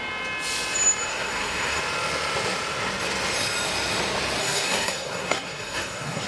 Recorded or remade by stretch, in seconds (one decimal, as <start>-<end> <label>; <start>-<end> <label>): 0.0-1.1 recorded; 1.1-1.8 remade; 1.8-4.4 recorded; 4.4-6.3 remade

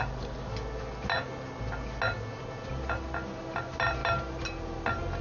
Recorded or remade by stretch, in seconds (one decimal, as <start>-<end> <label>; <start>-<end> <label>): 0.0-5.2 recorded

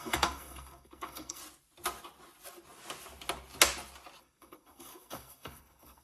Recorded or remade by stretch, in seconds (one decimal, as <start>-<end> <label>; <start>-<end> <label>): 0.0-1.4 remade; 1.4-4.2 recorded; 4.2-6.0 remade

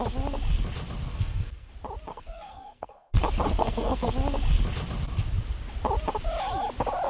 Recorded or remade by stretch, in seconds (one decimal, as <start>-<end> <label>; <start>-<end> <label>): 0.0-1.1 recorded; 1.1-1.7 remade; 1.7-2.1 recorded; 2.1-3.2 remade; 3.2-3.6 recorded; 3.6-4.1 remade; 4.1-7.1 recorded

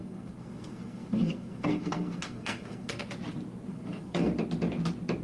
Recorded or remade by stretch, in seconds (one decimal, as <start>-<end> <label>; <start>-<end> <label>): 0.0-3.1 remade; 3.1-3.7 recorded; 3.7-4.3 remade; 4.3-5.2 recorded

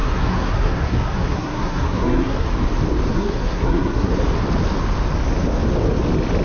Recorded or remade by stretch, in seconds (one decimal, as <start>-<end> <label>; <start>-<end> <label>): 0.0-2.5 remade; 2.5-3.1 recorded; 3.1-4.1 remade; 4.1-6.4 recorded

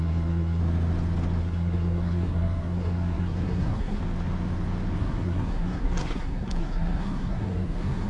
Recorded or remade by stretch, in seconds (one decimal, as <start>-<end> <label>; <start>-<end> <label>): 0.0-0.6 remade; 0.6-1.4 recorded; 1.4-4.0 remade; 4.0-5.0 recorded; 5.0-8.1 remade